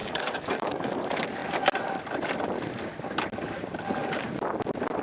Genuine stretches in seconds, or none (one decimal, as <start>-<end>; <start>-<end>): 0.9-5.0